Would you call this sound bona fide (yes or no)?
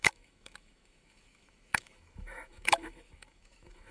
no